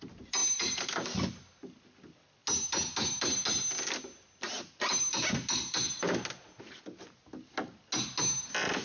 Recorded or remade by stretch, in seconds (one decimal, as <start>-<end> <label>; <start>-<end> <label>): 0.0-8.8 recorded